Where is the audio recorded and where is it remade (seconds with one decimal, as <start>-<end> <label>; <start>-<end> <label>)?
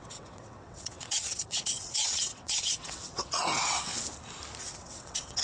0.0-3.9 remade; 3.9-4.6 recorded; 4.6-5.4 remade